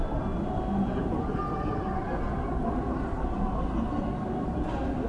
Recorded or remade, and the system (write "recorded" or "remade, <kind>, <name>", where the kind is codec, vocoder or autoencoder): recorded